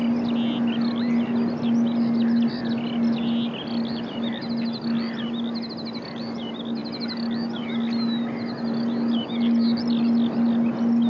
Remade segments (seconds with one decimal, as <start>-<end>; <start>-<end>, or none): none